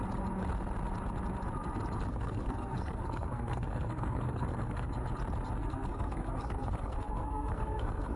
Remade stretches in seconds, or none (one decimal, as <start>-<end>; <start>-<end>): 2.1-4.9; 5.6-8.2